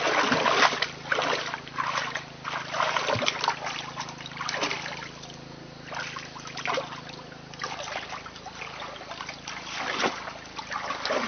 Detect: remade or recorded recorded